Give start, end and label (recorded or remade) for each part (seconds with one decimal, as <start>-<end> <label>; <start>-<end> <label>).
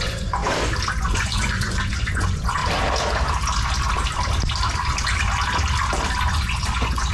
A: 0.0-0.4 remade; 0.4-1.0 recorded; 1.0-2.6 remade; 2.6-6.3 recorded; 6.3-7.1 remade